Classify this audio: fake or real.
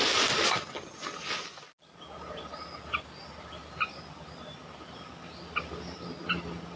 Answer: real